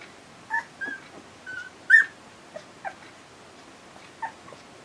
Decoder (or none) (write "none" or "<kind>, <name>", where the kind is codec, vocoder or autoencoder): none